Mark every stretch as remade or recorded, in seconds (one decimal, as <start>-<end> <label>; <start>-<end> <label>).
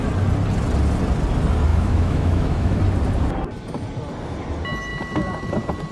0.0-1.7 recorded; 1.7-2.8 remade; 2.8-5.9 recorded